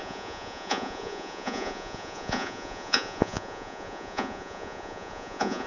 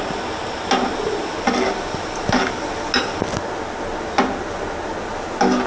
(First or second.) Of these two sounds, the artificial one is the first